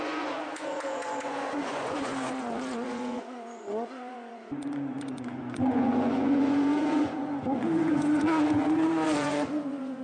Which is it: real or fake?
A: fake